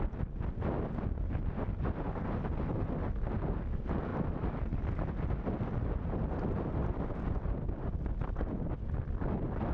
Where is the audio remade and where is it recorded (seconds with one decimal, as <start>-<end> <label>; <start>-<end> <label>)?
0.0-4.1 recorded; 4.1-5.1 remade; 5.1-9.7 recorded